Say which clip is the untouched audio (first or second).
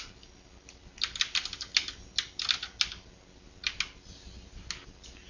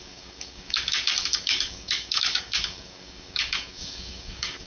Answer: first